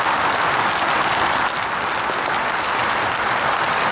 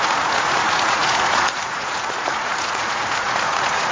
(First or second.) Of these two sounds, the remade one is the second